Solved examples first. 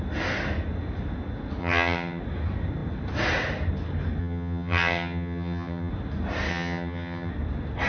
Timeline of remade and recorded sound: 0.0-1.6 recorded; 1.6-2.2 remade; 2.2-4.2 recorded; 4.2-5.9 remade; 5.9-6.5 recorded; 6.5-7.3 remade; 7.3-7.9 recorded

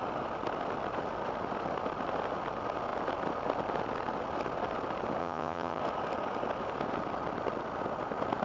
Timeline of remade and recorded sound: 0.0-5.2 recorded; 5.2-5.8 remade; 5.8-8.4 recorded

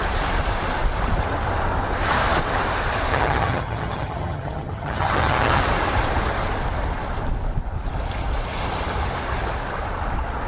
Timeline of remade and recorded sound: 0.0-3.1 recorded; 3.1-5.6 remade; 5.6-10.5 recorded